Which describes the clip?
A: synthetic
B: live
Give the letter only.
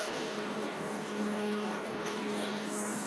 A